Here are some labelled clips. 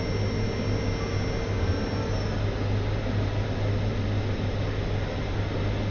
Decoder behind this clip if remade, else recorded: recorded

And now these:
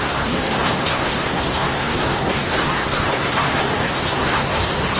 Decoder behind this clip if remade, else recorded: remade, codec, SNAC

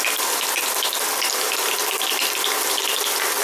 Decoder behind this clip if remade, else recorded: recorded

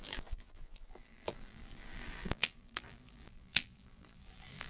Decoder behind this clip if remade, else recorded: remade, vocoder, BigVGAN v2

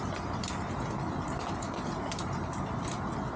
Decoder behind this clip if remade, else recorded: recorded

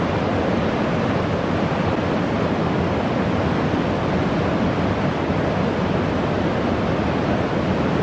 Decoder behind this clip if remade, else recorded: recorded